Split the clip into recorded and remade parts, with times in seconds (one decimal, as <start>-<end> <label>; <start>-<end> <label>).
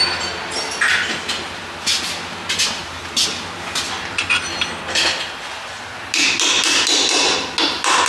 0.0-8.1 recorded